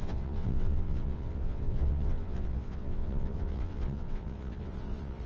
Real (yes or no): no